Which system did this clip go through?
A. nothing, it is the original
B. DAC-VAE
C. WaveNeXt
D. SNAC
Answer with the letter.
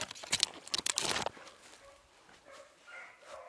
A